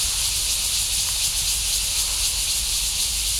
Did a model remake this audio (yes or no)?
no